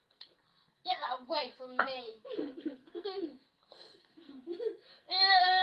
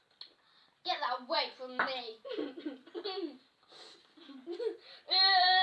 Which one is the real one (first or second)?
second